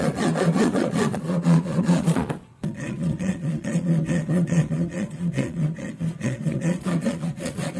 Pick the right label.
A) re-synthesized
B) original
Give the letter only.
A